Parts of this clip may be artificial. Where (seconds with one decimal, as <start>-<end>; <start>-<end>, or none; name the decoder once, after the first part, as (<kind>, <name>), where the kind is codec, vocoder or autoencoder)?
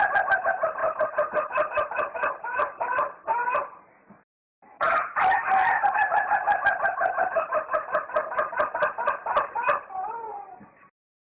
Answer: 0.8-5.7 (vocoder, BigVGAN v2)